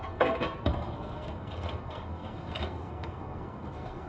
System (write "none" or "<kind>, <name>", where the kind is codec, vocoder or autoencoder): codec, SNAC